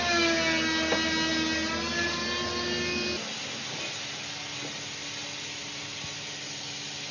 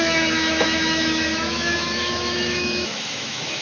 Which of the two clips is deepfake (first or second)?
second